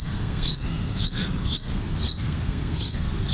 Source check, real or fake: fake